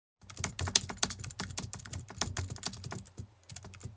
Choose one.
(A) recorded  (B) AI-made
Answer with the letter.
A